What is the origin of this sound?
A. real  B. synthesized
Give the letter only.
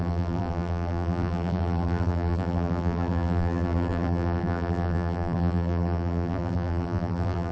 B